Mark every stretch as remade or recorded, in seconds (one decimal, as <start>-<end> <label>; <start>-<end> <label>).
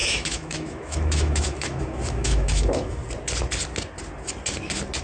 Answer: 0.0-3.0 remade; 3.0-5.0 recorded